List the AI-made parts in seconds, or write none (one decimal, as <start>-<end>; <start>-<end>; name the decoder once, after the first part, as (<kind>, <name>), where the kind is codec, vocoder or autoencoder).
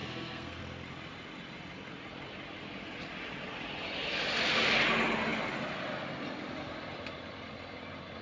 0.0-0.6 (codec, SNAC)